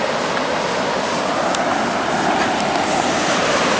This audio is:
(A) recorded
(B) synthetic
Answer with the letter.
A